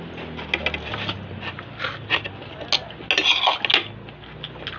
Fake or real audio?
real